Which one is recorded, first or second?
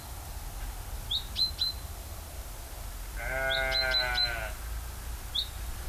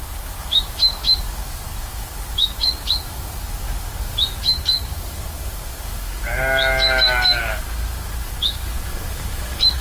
first